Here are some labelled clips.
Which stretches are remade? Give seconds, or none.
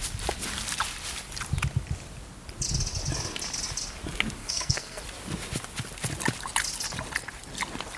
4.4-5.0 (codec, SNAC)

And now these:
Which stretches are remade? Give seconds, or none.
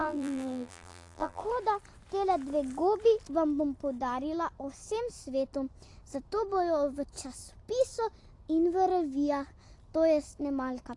0.0-1.4 (vocoder, BigVGAN v2)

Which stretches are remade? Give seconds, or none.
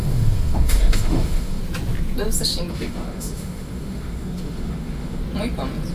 0.0-1.6 (autoencoder, DAC-VAE); 2.7-5.2